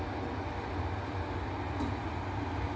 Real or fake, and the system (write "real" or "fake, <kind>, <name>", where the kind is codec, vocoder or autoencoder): real